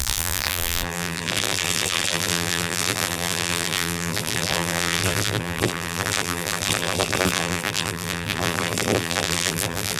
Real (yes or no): no